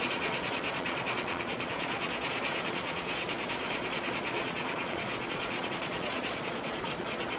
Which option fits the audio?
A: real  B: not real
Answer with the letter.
B